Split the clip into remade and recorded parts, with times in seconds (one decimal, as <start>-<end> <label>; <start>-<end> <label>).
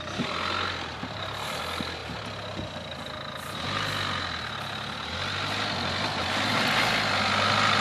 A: 0.0-0.9 recorded; 0.9-1.6 remade; 1.6-7.8 recorded